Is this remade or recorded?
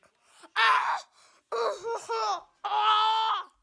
recorded